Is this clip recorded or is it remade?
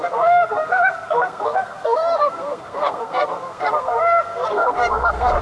remade